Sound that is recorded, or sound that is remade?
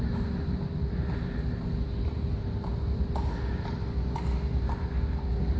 recorded